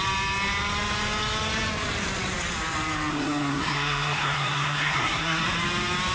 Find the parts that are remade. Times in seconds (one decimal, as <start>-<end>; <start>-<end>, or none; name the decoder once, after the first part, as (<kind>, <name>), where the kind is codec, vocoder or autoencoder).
3.1-5.4 (codec, SNAC)